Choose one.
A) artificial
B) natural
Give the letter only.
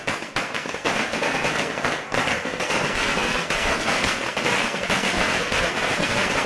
A